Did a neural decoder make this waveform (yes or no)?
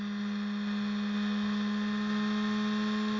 no